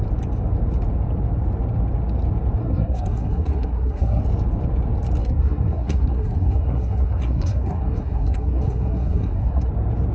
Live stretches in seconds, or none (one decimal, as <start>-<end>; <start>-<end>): 0.0-2.6; 4.2-5.2; 9.7-10.1